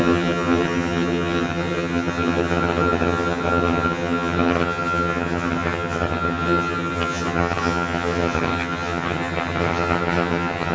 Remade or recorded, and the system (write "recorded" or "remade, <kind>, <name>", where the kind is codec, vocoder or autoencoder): remade, vocoder, HiFi-GAN